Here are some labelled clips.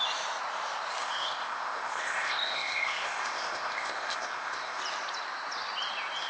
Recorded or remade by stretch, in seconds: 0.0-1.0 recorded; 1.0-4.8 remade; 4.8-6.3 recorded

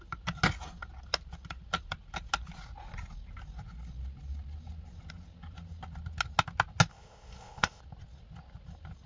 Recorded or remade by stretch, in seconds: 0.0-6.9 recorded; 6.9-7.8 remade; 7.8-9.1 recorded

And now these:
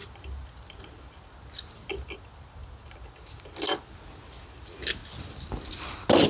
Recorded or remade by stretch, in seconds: 0.0-6.3 recorded

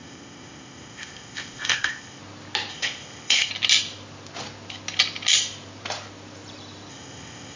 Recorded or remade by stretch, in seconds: 0.0-2.2 remade; 2.2-2.7 recorded; 2.7-3.5 remade; 3.5-6.9 recorded; 6.9-7.6 remade